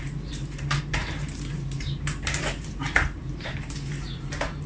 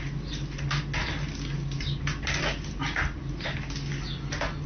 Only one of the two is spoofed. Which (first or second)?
first